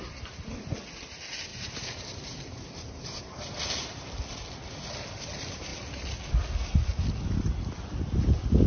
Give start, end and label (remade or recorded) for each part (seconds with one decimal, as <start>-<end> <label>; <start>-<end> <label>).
0.0-1.5 recorded; 1.5-3.6 remade; 3.6-8.7 recorded